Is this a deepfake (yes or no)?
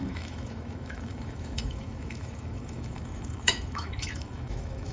yes